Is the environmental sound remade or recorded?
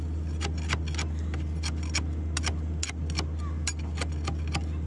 recorded